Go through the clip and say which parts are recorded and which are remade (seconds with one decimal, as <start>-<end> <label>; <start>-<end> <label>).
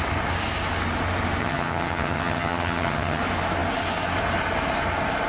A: 0.0-1.4 recorded; 1.4-3.2 remade; 3.2-5.3 recorded